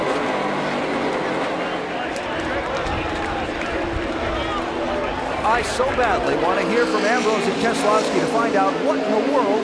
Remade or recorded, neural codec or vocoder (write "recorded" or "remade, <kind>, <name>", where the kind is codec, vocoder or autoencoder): recorded